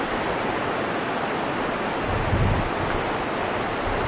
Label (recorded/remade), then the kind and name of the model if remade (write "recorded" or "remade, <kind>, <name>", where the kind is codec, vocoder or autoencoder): recorded